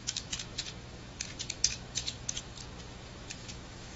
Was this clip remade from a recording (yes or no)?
yes